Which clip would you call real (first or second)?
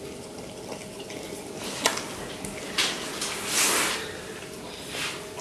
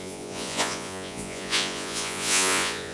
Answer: first